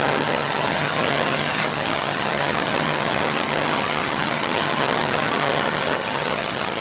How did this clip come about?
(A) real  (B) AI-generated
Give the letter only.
B